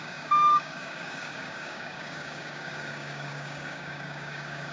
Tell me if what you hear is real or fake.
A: fake